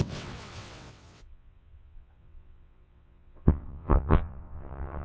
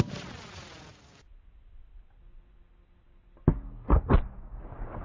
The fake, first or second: first